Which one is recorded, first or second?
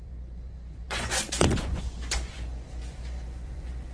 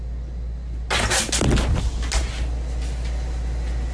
second